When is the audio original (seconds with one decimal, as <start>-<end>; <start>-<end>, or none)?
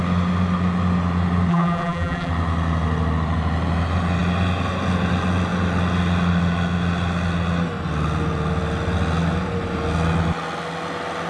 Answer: 0.0-1.5; 2.3-11.3